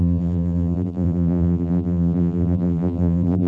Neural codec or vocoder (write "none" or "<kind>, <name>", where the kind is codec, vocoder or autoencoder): vocoder, BigVGAN v2